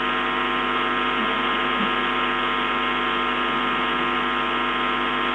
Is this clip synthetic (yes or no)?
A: no